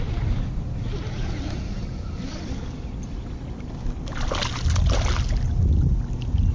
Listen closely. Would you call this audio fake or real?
real